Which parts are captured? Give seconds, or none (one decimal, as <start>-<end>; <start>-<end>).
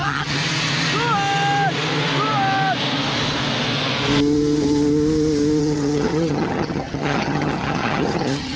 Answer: 0.4-5.6